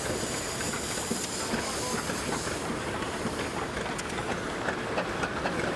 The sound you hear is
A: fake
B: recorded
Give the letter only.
B